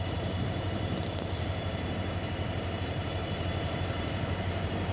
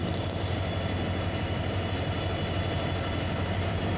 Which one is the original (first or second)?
second